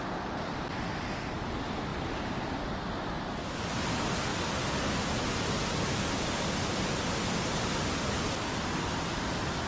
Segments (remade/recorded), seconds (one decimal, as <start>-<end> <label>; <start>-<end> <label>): 0.0-9.7 recorded